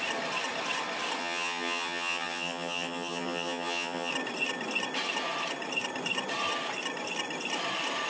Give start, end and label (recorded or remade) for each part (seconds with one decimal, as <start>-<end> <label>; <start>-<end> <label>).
0.0-1.2 recorded; 1.2-4.1 remade; 4.1-8.1 recorded